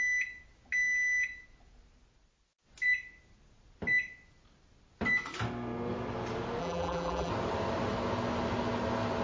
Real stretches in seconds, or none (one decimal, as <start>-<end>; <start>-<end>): 0.0-6.6; 7.3-9.2